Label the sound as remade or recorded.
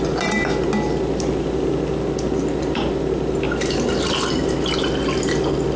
recorded